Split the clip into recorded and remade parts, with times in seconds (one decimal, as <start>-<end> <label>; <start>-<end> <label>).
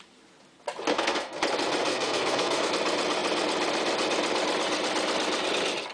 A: 0.0-0.9 recorded; 0.9-1.4 remade; 1.4-1.9 recorded; 1.9-2.7 remade; 2.7-5.9 recorded